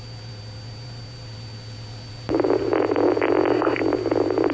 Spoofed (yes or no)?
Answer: no